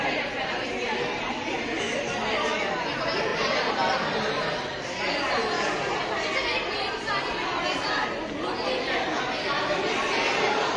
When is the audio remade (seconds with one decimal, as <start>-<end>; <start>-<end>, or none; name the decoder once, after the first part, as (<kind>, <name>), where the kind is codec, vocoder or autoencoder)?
3.3-5.0 (vocoder, BigVGAN v2)